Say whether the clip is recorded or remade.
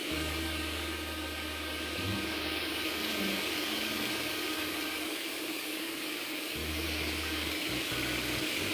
remade